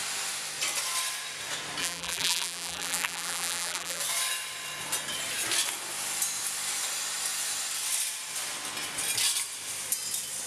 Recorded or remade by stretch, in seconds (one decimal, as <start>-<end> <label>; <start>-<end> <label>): 0.0-1.8 recorded; 1.8-4.0 remade; 4.0-10.5 recorded